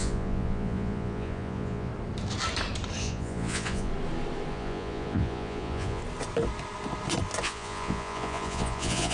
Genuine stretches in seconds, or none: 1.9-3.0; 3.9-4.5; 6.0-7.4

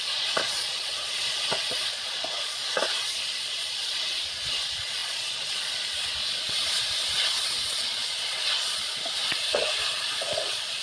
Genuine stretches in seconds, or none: none

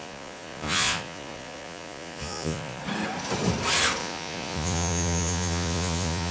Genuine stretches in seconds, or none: 2.8-4.0

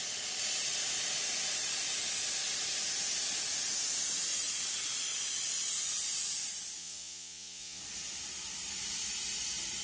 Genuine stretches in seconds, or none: 0.0-6.8; 7.8-9.8

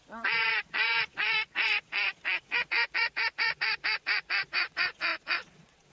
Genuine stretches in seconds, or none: none